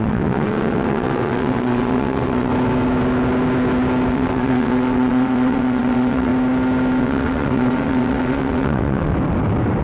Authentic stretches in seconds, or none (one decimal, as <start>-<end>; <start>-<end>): 2.5-4.1; 6.3-7.0; 9.1-9.8